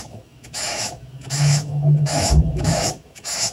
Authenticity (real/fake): fake